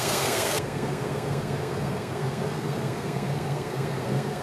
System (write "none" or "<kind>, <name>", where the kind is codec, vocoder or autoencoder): codec, SNAC